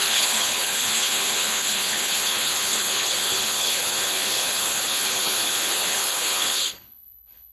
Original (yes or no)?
no